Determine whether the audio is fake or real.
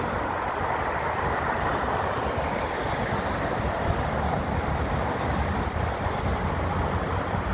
real